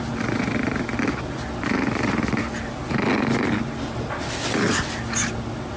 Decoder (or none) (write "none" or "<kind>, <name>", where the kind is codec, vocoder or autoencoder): none